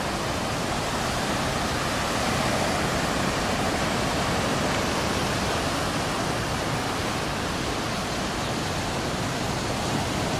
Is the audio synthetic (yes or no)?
no